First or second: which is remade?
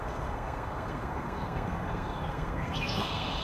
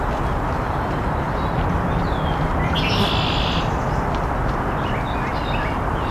first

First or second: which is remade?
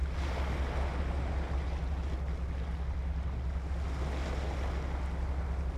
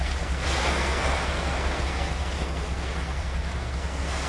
second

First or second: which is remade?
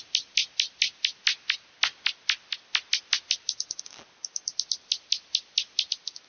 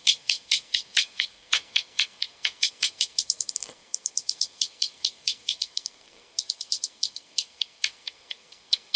second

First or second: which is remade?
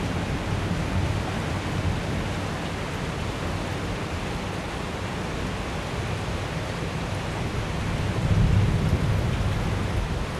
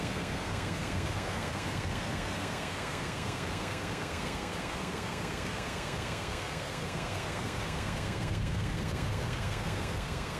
second